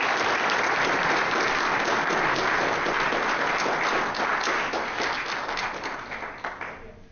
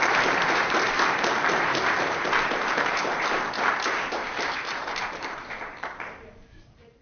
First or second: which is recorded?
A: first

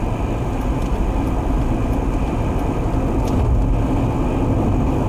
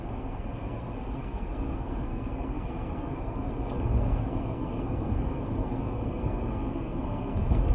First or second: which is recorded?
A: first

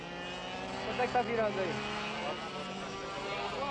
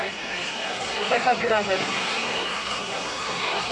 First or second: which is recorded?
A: first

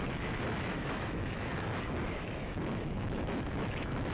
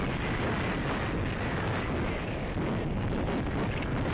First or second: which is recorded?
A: second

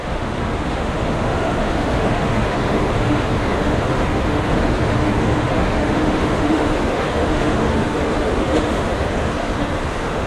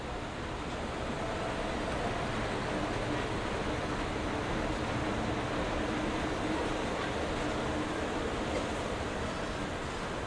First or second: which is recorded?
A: second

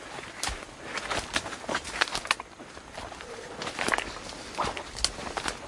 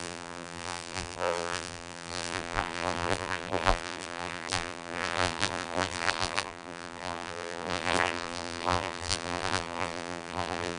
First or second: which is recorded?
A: first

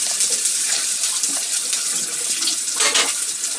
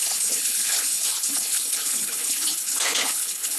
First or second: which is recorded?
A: first